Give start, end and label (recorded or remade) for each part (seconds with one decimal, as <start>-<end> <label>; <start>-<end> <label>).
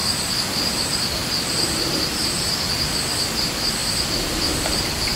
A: 0.0-5.2 recorded